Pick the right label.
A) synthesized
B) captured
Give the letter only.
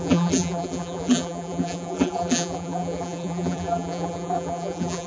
A